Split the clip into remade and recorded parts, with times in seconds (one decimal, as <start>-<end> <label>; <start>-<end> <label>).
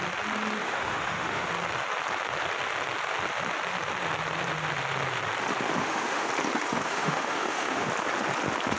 0.0-0.6 recorded; 0.6-1.5 remade; 1.5-5.8 recorded; 5.8-6.3 remade; 6.3-6.7 recorded; 6.7-7.9 remade; 7.9-8.8 recorded